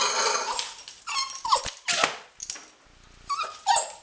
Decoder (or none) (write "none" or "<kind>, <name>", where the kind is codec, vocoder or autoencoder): none